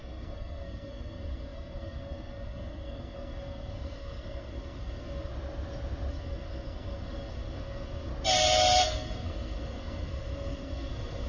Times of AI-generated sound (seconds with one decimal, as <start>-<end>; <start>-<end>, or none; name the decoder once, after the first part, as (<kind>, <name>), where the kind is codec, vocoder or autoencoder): 0.0-5.3 (codec, SNAC); 6.1-8.1; 8.8-11.3